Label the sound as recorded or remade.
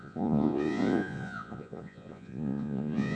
remade